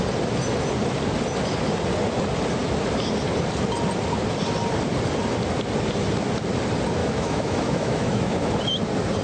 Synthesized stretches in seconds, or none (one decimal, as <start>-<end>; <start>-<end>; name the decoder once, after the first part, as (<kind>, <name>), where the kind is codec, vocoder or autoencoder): 7.0-8.5 (autoencoder, DAC-VAE)